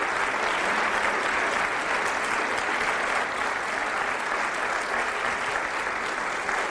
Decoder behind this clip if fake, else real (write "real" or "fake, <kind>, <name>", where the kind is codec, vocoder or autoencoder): real